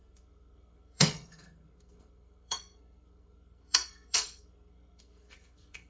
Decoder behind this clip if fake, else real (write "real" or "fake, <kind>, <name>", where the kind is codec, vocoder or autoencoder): fake, codec, SNAC